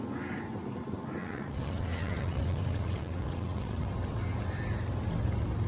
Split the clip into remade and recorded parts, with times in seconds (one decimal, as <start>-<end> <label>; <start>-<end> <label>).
0.0-1.2 recorded; 1.2-3.9 remade; 3.9-5.7 recorded

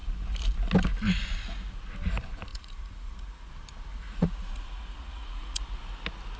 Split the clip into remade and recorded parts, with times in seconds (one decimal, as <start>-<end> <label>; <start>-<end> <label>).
0.0-2.5 recorded; 2.5-3.5 remade; 3.5-3.9 recorded; 3.9-5.6 remade; 5.6-6.4 recorded

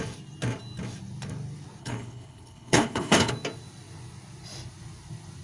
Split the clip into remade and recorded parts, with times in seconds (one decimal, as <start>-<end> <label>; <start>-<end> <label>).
0.0-1.8 recorded; 1.8-3.3 remade; 3.3-5.4 recorded

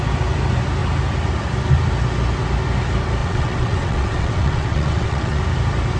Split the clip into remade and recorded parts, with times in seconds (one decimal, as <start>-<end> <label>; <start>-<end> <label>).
0.0-3.2 recorded; 3.2-5.4 remade; 5.4-6.0 recorded

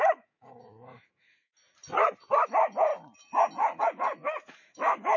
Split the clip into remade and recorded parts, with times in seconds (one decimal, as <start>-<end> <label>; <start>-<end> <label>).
0.0-1.5 remade; 1.5-2.3 recorded; 2.3-2.9 remade; 2.9-3.8 recorded; 3.8-5.2 remade

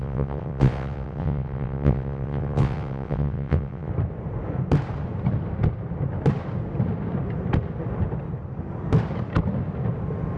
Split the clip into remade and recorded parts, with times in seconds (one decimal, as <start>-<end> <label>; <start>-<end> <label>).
0.0-3.9 remade; 3.9-10.4 recorded

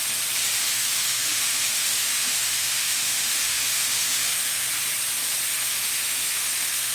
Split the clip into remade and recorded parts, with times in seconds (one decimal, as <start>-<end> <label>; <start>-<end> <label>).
0.0-0.6 recorded; 0.6-4.7 remade; 4.7-5.6 recorded; 5.6-6.9 remade